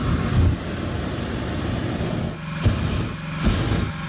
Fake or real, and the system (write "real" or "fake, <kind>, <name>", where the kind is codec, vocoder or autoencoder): real